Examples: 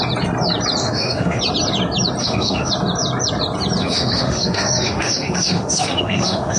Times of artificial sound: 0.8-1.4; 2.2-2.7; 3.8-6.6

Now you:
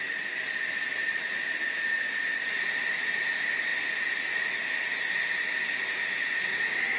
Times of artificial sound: none

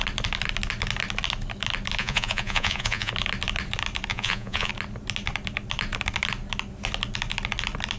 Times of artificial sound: 2.0-3.1; 4.1-4.7

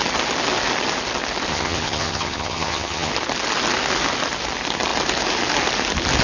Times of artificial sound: 1.5-3.1

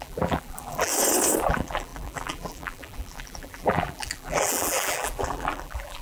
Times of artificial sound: 0.0-0.9; 1.4-6.0

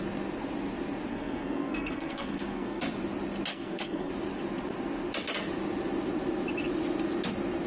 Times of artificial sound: 1.1-2.8; 3.5-4.1

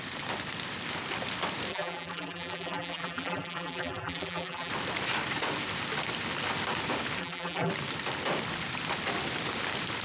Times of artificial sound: 1.7-4.7; 7.2-7.7

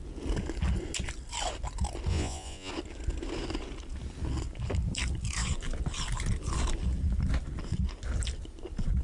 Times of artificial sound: 2.1-2.7